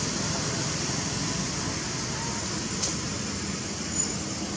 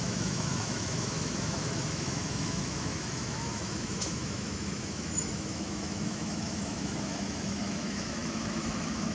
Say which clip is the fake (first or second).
second